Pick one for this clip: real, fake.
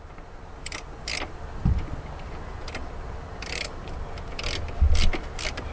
real